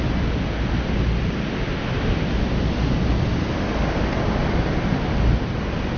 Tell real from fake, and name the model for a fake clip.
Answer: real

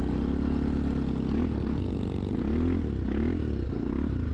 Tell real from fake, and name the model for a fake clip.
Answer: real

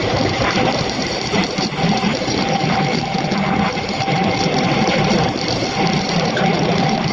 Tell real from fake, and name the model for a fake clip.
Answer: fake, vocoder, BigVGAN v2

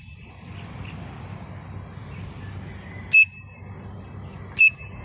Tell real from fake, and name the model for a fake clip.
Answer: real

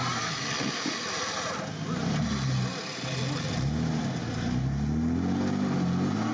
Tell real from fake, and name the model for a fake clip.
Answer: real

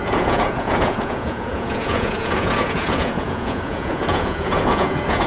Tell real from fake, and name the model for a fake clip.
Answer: fake, vocoder, Vocos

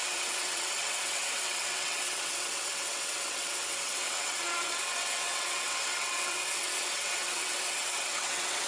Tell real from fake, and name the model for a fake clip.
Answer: fake, vocoder, WaveNeXt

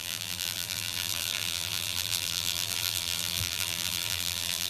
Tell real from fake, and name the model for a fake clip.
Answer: fake, vocoder, BigVGAN v2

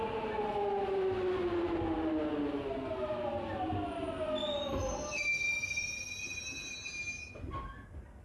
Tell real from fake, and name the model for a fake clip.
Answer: real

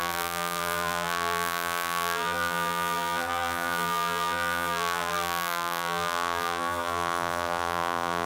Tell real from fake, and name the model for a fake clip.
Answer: fake, vocoder, BigVGAN v2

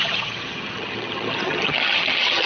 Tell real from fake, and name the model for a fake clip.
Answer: fake, vocoder, HiFi-GAN